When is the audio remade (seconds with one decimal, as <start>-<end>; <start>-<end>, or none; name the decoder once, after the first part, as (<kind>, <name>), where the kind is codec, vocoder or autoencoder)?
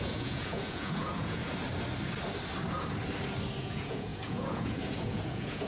0.0-1.4 (vocoder, Vocos); 3.6-5.7